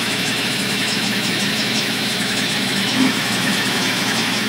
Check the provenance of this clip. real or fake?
fake